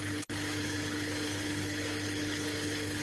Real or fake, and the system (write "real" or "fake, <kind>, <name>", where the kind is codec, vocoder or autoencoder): fake, codec, HILCodec